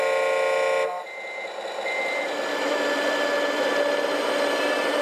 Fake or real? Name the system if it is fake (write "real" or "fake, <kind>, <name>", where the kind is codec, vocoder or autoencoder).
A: real